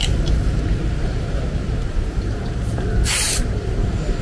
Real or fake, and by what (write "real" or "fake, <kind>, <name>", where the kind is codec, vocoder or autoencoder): fake, vocoder, BigVGAN v2